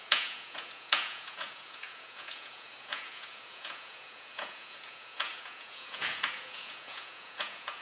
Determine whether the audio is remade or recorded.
remade